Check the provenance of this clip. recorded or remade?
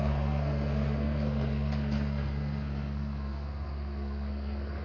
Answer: remade